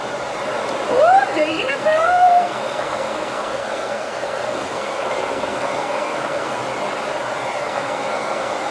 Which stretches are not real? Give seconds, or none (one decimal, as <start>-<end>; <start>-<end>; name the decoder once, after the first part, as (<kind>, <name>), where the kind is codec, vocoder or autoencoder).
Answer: 1.5-6.6 (codec, SNAC); 7.6-8.7